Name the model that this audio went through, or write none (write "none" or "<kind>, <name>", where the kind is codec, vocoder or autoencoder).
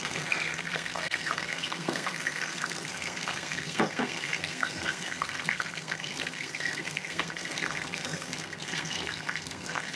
codec, SNAC